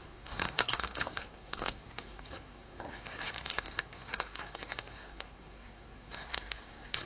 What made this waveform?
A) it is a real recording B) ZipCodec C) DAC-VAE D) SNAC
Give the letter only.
D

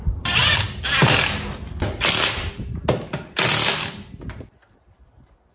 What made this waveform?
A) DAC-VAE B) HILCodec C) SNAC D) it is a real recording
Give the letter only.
D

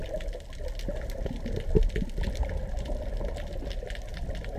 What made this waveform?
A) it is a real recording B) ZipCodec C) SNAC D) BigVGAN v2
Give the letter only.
A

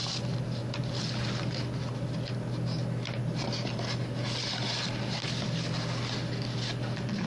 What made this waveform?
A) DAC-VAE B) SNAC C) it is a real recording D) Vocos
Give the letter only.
C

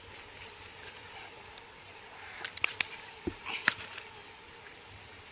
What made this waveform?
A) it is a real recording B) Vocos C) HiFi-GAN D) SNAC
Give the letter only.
A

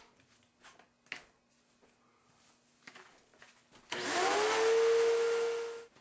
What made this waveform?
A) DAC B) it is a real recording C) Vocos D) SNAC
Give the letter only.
B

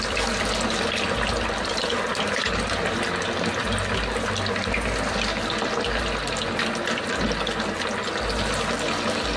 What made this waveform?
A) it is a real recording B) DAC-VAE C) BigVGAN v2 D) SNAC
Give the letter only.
A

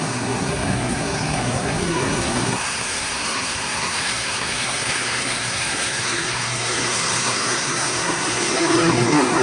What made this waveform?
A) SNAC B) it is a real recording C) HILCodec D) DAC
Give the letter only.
A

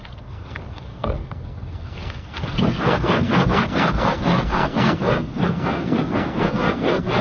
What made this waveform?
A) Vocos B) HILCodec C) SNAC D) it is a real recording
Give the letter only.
C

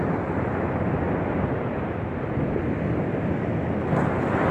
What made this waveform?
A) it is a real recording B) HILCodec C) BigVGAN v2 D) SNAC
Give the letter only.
A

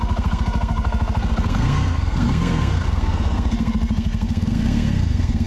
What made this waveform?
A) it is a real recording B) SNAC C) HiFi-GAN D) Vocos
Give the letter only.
B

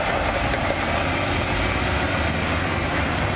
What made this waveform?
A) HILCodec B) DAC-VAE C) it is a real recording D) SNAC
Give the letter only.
C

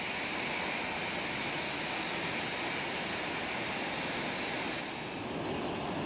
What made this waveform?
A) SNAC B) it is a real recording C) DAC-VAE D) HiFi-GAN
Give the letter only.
B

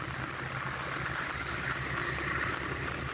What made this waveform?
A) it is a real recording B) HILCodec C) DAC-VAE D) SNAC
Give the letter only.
A